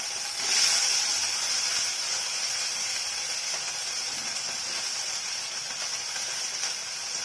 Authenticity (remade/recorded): recorded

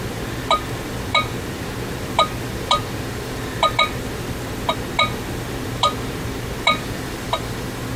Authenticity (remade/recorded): remade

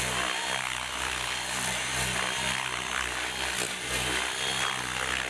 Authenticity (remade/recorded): remade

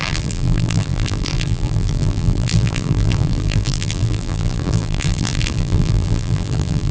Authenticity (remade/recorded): remade